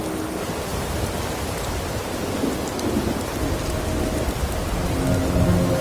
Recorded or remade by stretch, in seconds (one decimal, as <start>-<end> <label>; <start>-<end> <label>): 0.0-5.8 recorded